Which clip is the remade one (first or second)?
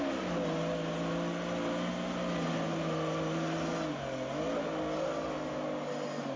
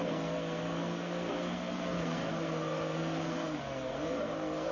second